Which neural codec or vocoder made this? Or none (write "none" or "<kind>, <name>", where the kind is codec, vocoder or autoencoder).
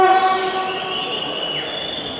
none